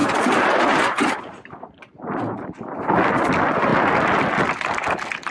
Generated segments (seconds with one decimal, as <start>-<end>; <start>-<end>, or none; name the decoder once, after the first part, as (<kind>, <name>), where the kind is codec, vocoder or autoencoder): 0.0-3.0 (vocoder, BigVGAN v2)